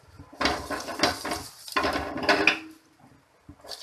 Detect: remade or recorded recorded